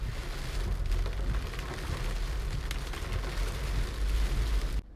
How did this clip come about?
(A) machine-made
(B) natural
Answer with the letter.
B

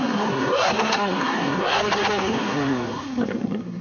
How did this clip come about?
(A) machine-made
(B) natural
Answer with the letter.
A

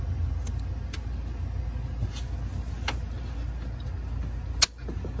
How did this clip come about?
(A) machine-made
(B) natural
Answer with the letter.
B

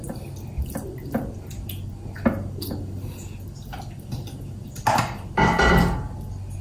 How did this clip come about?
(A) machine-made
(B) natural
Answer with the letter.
B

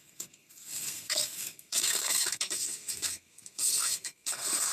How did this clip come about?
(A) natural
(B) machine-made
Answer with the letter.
B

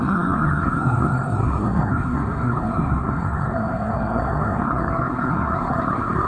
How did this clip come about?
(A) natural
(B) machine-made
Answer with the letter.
B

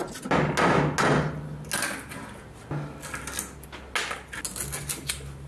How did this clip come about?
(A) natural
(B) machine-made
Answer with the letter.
A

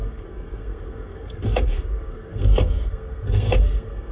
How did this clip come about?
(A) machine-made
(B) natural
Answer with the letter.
A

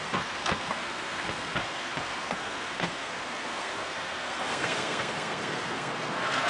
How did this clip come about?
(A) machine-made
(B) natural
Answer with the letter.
A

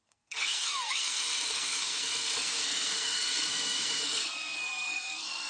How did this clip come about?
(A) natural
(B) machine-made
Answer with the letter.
B